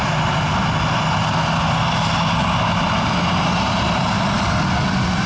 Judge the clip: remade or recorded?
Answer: recorded